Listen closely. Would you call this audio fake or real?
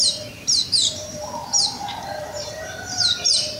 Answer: fake